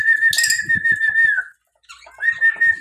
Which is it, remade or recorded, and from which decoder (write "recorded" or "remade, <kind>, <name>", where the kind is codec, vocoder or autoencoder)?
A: recorded